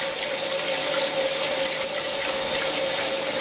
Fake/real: real